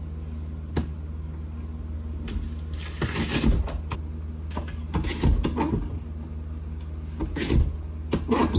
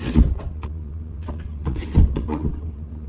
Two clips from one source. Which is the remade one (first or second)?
second